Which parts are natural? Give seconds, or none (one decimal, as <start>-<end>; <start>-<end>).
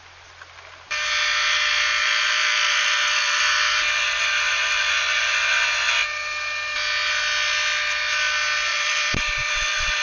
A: 0.0-2.0; 3.4-8.7